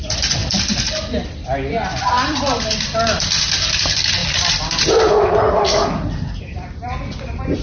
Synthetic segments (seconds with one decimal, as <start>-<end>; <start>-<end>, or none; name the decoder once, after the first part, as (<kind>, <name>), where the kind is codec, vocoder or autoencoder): 0.0-0.4 (vocoder, BigVGAN v2); 2.0-7.6